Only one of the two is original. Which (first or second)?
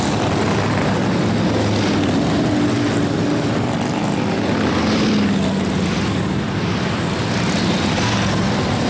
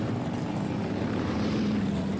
first